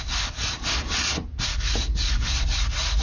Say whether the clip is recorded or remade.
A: recorded